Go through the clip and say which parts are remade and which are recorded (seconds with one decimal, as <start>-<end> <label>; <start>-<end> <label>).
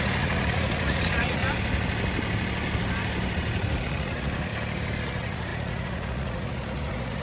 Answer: 0.0-1.4 remade; 1.4-3.8 recorded; 3.8-4.5 remade; 4.5-5.0 recorded; 5.0-7.2 remade